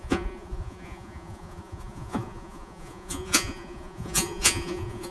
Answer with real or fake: fake